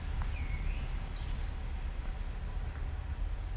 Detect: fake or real real